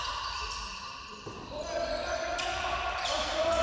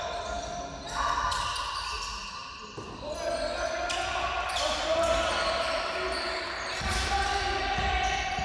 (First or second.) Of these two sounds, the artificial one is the first